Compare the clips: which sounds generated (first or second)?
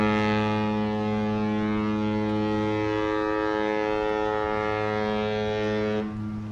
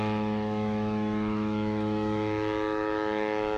second